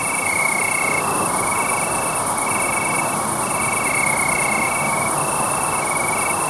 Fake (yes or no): yes